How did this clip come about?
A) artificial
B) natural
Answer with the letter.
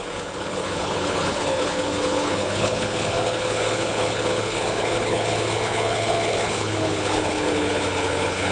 A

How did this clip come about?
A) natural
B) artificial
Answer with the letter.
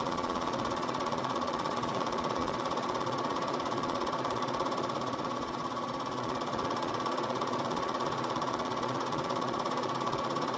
B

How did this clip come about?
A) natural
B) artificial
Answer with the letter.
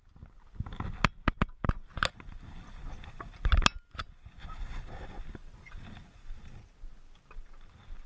A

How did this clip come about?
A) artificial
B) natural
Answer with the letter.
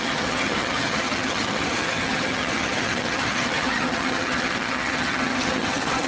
A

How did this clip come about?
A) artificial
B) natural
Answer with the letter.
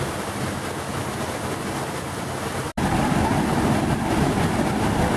B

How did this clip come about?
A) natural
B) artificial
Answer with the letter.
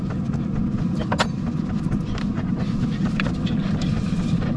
A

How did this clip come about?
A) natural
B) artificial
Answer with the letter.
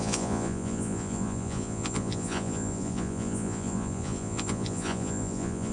B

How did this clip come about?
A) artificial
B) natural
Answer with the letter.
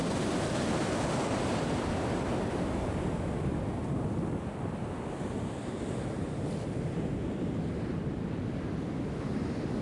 B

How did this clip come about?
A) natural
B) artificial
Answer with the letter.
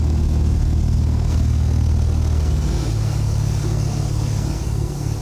B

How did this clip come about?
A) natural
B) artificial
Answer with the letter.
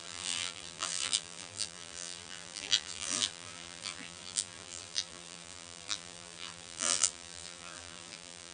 B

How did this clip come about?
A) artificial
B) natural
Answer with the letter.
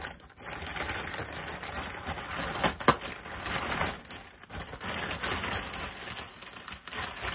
B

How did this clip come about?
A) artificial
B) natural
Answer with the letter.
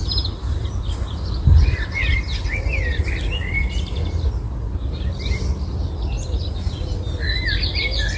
B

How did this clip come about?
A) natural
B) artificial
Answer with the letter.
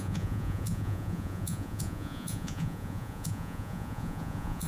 B